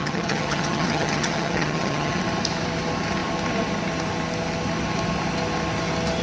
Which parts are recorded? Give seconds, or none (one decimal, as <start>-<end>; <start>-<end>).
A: 2.2-6.2